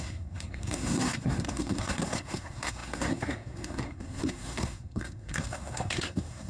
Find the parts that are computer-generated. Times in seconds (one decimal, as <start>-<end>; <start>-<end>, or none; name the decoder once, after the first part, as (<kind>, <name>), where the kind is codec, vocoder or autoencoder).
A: 0.0-6.5 (codec, SNAC)